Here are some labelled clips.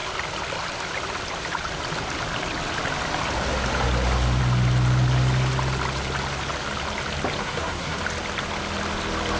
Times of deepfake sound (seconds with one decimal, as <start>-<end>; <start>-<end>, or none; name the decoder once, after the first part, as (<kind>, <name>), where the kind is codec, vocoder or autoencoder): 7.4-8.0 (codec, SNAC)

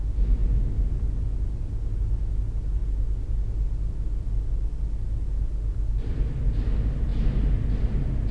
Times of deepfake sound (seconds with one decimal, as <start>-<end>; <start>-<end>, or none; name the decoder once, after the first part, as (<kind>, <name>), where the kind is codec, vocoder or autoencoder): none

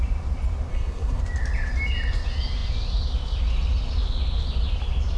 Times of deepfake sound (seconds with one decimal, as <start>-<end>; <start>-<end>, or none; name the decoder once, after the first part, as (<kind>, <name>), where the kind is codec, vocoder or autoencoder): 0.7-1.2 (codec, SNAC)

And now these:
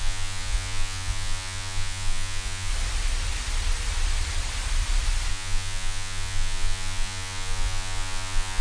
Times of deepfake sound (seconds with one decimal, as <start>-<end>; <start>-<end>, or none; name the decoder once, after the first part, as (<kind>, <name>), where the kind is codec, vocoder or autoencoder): 0.0-2.7 (vocoder, Vocos); 5.3-8.6

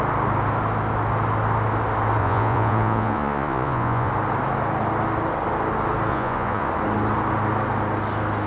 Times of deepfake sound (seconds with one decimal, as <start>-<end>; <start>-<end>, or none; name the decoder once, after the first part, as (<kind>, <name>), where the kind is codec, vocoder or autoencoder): 2.2-4.1 (vocoder, Vocos); 6.1-6.7

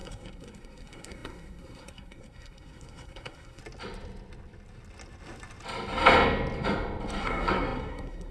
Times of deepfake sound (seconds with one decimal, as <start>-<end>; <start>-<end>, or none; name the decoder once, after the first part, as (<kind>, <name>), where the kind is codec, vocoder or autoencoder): 0.0-3.6 (codec, SNAC); 7.2-8.3

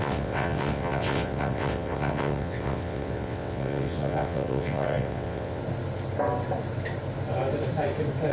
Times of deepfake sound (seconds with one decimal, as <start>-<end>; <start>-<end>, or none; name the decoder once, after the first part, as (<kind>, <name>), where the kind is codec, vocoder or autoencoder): 0.0-5.6 (vocoder, WaveNeXt)

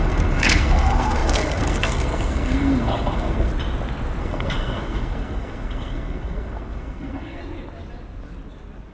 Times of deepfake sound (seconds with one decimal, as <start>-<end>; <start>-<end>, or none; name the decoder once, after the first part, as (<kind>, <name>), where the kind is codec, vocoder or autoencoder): 0.0-3.5 (codec, SNAC); 4.2-7.4